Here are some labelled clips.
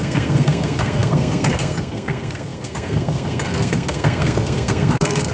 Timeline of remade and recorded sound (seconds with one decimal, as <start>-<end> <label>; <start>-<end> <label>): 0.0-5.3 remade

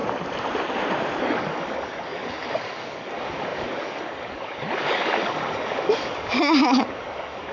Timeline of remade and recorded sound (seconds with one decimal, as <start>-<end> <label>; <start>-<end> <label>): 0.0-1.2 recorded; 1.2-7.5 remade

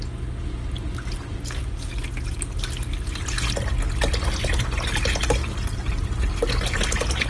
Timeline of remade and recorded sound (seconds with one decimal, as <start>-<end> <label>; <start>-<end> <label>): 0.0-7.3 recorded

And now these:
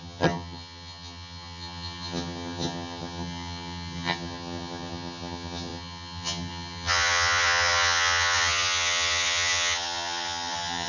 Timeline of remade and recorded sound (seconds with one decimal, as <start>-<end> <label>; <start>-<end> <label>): 0.0-10.9 remade